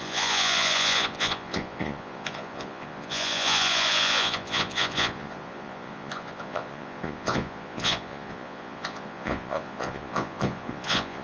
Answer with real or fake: fake